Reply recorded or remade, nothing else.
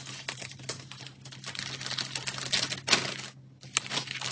recorded